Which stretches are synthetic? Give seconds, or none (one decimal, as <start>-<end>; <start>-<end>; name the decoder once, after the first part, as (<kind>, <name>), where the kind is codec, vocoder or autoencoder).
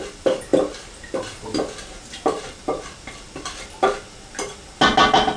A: none